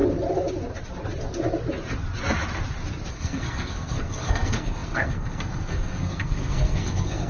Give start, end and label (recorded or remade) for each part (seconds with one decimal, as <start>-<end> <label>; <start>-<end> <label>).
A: 0.0-3.1 recorded; 3.1-7.3 remade